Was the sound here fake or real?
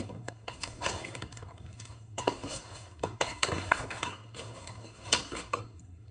fake